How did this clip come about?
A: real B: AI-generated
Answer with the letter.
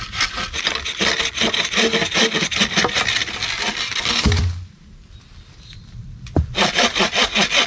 A